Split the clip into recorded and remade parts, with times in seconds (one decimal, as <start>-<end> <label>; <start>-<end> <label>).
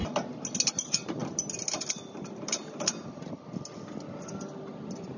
0.0-5.2 recorded